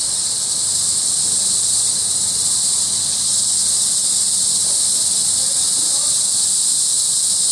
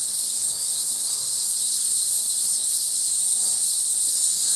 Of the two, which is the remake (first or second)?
second